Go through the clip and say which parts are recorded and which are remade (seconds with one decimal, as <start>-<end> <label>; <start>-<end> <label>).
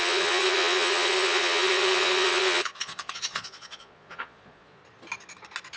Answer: 0.0-4.8 remade; 4.8-5.8 recorded